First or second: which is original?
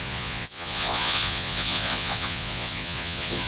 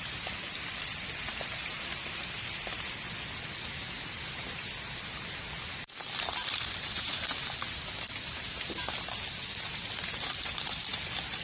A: second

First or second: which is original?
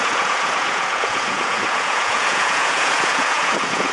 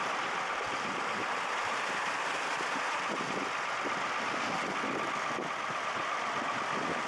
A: second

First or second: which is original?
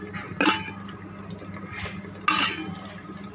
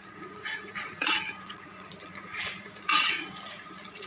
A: first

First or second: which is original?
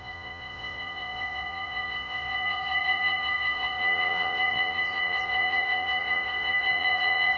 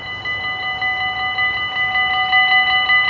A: second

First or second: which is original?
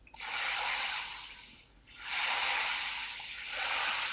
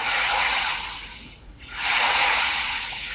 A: first